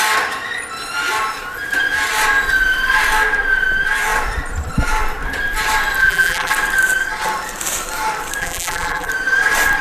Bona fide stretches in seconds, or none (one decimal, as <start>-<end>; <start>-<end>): 0.0-6.0; 6.5-8.4; 9.1-9.8

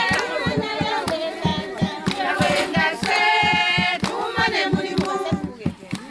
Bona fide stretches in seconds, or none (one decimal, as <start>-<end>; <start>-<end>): 0.0-6.1

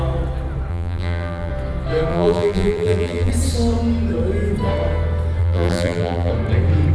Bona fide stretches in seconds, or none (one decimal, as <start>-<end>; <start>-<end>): 0.0-0.7; 1.5-2.1; 3.3-5.4; 6.3-6.9